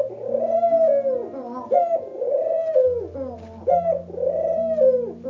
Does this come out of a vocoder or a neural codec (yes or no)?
no